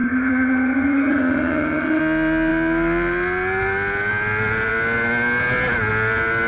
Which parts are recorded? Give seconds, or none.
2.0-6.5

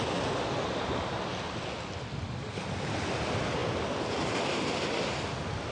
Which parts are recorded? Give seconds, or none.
0.0-5.7

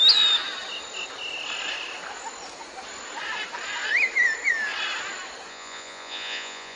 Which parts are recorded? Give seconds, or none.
0.0-5.5

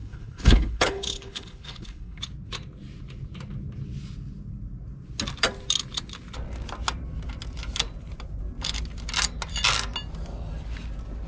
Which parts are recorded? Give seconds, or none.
2.2-11.3